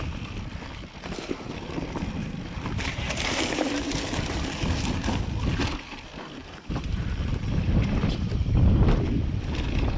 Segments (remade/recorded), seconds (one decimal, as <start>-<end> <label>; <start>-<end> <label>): 0.0-6.4 recorded; 6.4-8.8 remade; 8.8-10.0 recorded